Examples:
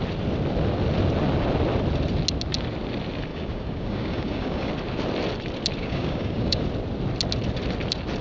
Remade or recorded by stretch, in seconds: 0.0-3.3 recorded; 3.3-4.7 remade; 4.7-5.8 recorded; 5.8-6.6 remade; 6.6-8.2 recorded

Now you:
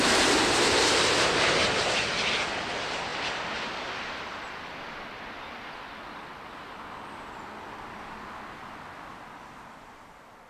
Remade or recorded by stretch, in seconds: 0.0-10.5 recorded

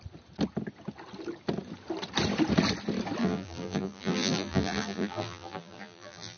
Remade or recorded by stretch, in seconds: 0.0-3.2 recorded; 3.2-6.4 remade

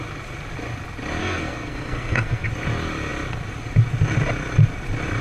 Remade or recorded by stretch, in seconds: 0.0-1.2 recorded; 1.2-2.5 remade; 2.5-5.2 recorded

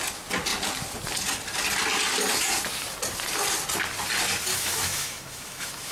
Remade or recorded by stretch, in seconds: 0.0-4.5 recorded; 4.5-5.9 remade

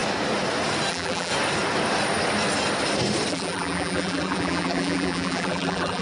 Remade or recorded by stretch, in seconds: 0.0-0.9 recorded; 0.9-1.3 remade; 1.3-3.3 recorded; 3.3-6.0 remade

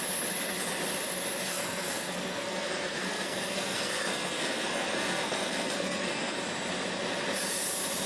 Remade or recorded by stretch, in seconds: 0.0-1.5 recorded; 1.5-6.4 remade; 6.4-8.1 recorded

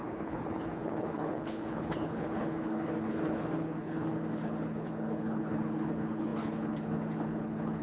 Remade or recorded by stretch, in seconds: 0.0-7.8 remade